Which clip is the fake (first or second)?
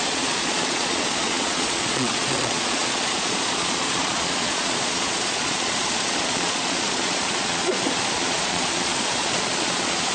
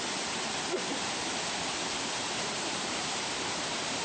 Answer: first